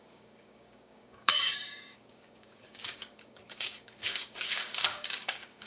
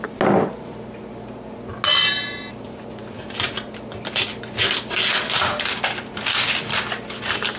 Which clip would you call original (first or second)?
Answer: second